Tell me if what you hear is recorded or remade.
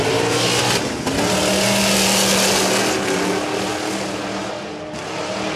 recorded